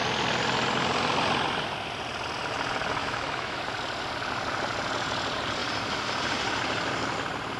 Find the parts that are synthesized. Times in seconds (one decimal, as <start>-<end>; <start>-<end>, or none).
3.0-3.6